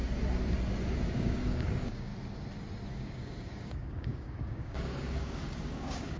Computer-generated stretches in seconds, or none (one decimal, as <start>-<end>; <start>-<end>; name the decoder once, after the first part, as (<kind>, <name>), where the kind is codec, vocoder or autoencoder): 1.1-2.1 (codec, DAC); 2.9-6.2